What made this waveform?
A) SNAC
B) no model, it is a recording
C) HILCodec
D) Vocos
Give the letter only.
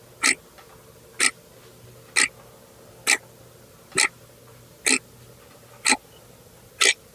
B